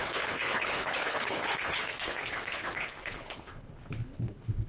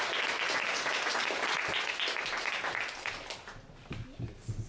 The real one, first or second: second